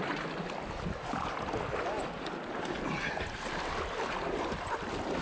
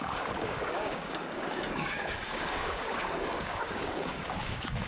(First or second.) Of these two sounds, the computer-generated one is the second